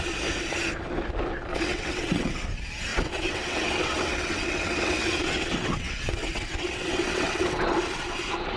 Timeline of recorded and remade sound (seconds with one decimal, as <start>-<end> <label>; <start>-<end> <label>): 0.0-1.5 recorded; 1.5-2.3 remade; 2.3-2.9 recorded; 2.9-7.6 remade; 7.6-8.6 recorded

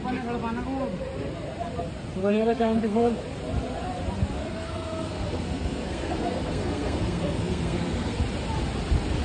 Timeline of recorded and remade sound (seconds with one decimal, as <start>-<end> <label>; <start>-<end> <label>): 0.0-2.2 recorded; 2.2-3.2 remade; 3.2-4.4 recorded; 4.4-8.2 remade; 8.2-9.2 recorded